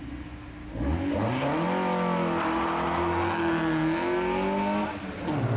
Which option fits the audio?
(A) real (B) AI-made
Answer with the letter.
A